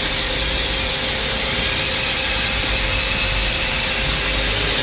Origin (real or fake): real